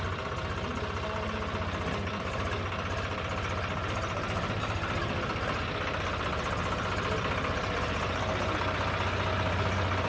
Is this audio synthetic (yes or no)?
no